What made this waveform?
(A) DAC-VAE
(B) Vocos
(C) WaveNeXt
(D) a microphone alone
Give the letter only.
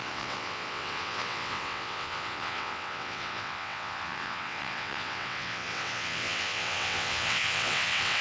C